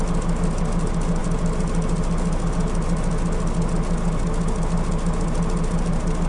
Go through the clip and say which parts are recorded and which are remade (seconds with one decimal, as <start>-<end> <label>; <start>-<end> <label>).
0.0-6.3 recorded